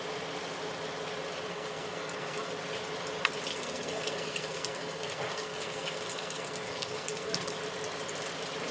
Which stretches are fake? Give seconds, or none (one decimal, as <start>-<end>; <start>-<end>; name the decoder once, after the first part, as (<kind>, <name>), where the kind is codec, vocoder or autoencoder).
1.5-2.5 (codec, SNAC); 3.5-7.6